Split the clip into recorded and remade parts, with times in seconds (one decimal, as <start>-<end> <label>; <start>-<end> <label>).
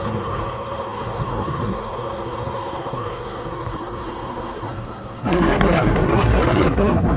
0.0-7.2 remade